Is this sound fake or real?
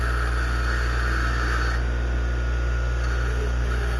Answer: real